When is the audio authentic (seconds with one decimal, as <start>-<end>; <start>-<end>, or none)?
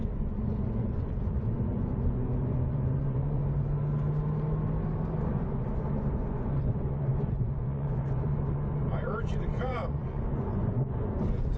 3.4-5.2